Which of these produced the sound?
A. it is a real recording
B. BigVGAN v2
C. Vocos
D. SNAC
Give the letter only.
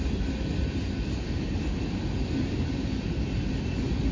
A